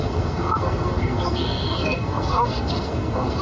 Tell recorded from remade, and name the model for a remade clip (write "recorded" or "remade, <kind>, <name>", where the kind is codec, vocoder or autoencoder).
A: remade, codec, SNAC